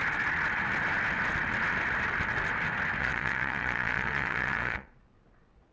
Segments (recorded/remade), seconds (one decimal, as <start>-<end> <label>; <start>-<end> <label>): 0.0-3.0 recorded; 3.0-5.7 remade